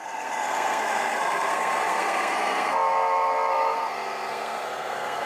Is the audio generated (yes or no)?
yes